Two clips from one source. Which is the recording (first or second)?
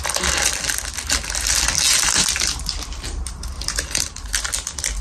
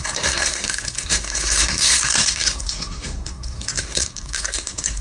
first